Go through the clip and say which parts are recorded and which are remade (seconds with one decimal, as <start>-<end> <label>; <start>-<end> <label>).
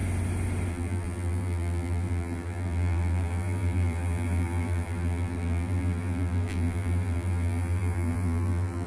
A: 0.0-0.7 recorded; 0.7-8.9 remade